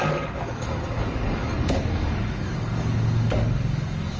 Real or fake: fake